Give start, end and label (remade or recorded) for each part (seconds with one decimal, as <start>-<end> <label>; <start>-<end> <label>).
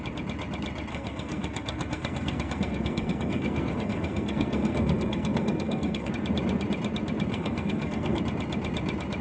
0.0-0.9 recorded; 0.9-6.1 remade; 6.1-7.3 recorded; 7.3-8.2 remade; 8.2-9.2 recorded